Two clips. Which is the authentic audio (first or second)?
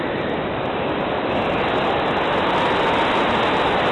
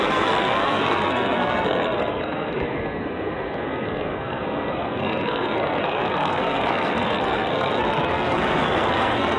first